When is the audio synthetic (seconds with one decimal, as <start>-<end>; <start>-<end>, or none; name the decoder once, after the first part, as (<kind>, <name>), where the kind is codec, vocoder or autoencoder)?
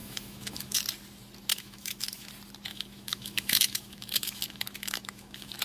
0.0-0.8 (autoencoder, DAC-VAE); 1.5-2.3; 2.7-5.6